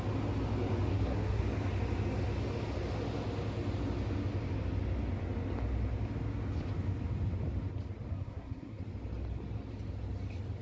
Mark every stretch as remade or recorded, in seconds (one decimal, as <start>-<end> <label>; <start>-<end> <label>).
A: 0.0-0.9 recorded; 0.9-1.4 remade; 1.4-8.1 recorded; 8.1-8.8 remade; 8.8-10.6 recorded